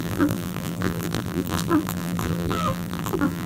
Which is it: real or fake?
fake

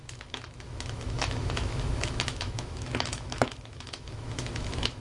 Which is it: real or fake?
fake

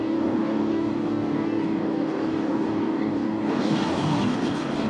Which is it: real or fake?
fake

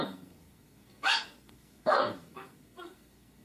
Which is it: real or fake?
fake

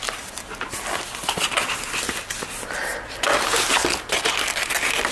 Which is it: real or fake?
real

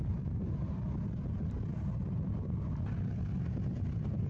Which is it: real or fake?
real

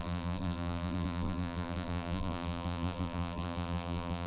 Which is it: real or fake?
fake